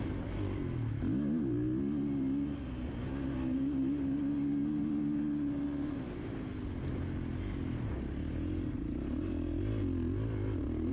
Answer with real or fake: real